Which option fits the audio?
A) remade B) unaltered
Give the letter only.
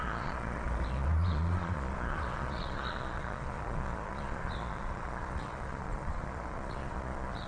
A